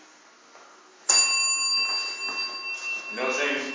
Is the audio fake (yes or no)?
no